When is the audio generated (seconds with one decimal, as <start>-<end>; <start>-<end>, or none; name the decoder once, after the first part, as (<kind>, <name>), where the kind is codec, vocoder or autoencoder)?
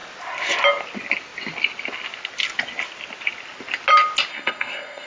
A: 4.3-5.1 (codec, SNAC)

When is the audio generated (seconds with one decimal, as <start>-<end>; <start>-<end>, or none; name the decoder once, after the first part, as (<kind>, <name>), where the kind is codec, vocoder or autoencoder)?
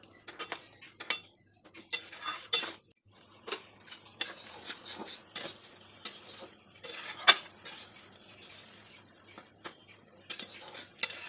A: none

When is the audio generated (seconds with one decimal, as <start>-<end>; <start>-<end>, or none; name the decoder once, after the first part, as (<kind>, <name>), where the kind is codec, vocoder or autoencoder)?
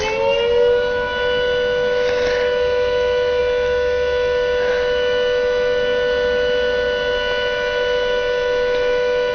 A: none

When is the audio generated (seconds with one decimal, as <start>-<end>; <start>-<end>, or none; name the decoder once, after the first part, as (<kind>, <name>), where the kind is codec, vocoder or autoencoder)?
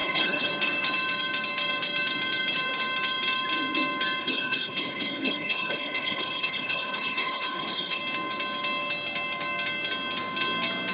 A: 0.0-0.5 (codec, HILCodec); 4.2-8.0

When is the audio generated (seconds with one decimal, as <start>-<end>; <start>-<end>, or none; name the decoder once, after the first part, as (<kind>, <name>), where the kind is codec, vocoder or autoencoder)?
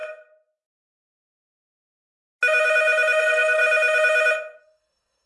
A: 3.2-3.6 (codec, SNAC); 4.6-5.3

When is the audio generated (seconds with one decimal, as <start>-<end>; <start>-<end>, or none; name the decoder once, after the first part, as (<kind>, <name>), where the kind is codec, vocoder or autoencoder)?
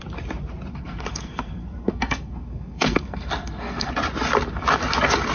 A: 0.7-3.9 (codec, SNAC)